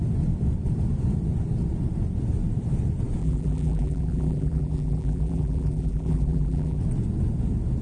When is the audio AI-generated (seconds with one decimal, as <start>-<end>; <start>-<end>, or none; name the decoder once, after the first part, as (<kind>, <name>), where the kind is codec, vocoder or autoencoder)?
3.2-6.8 (vocoder, BigVGAN v2)